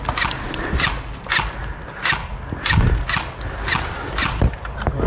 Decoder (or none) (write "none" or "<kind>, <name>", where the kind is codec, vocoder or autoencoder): none